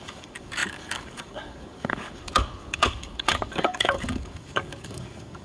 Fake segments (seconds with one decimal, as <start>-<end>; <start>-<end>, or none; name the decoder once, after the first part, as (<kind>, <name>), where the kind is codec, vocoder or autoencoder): 0.0-5.4 (codec, DAC)